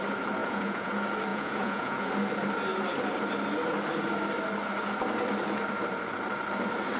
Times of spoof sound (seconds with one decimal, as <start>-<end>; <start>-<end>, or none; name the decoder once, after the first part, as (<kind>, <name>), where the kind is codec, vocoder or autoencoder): 0.4-0.9 (vocoder, Vocos); 1.3-2.1